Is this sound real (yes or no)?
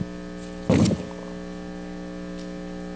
yes